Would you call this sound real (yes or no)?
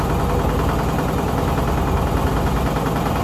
yes